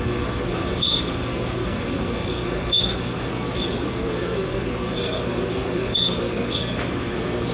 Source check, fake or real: fake